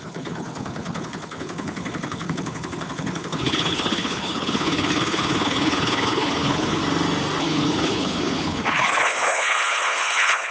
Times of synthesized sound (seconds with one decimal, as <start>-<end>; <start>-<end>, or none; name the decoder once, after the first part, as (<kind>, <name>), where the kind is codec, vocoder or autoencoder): 0.0-6.8 (codec, HILCodec); 7.4-10.5